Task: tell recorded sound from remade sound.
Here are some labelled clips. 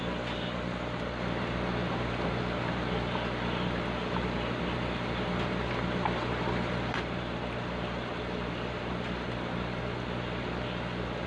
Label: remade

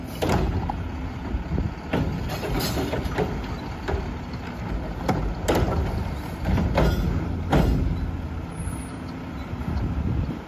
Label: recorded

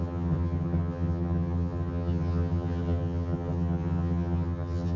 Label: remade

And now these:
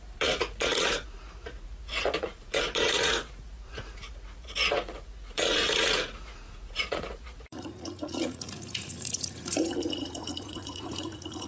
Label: remade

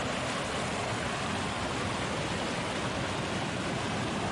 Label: recorded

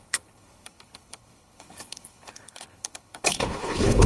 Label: remade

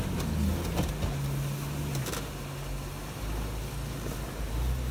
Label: recorded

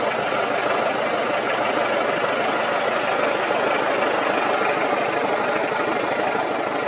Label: recorded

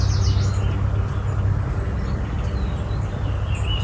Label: recorded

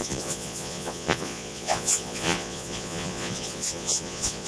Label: remade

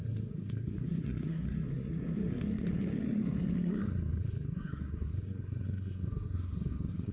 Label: remade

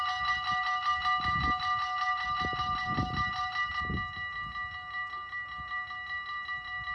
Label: recorded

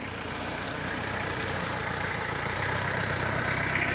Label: remade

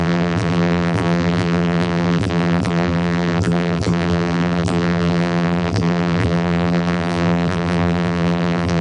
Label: remade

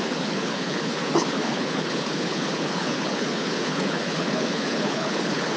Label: remade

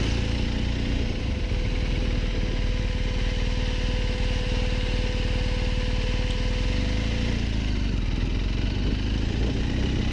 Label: recorded